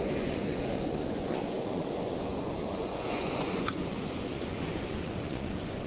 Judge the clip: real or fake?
fake